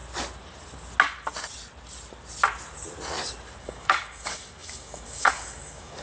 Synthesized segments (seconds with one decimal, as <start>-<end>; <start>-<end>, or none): 3.6-6.0